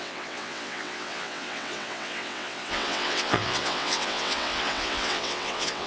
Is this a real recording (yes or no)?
no